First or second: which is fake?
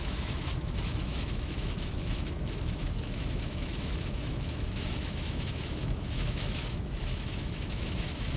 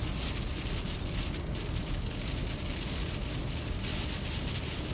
first